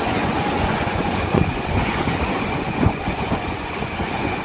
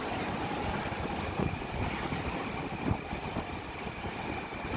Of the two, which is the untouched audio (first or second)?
second